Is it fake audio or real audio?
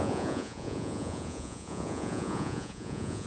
fake